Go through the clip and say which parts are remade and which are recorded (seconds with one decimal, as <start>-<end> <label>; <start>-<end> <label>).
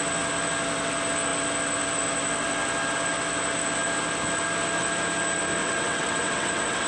0.0-5.6 recorded; 5.6-6.9 remade